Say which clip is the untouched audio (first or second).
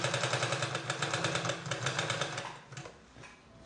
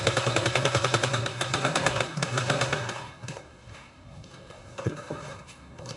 first